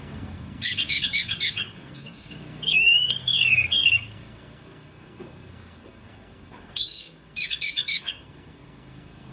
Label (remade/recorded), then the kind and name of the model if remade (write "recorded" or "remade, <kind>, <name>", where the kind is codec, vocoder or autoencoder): remade, codec, SNAC